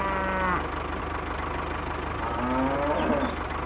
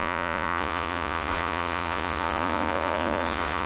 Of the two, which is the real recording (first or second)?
first